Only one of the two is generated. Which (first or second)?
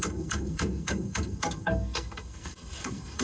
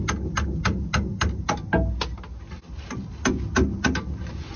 first